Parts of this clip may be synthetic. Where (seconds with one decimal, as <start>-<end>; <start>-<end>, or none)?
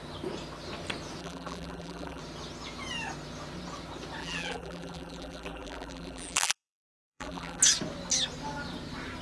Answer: 1.2-2.2; 4.2-7.6